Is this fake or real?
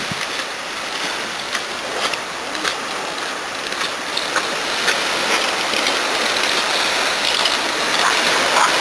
real